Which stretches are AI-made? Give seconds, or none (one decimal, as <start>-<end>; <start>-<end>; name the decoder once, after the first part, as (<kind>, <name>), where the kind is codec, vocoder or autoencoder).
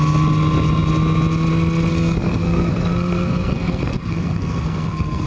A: 1.9-5.3 (codec, SNAC)